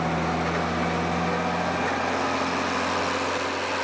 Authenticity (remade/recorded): recorded